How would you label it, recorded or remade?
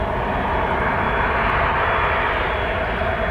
recorded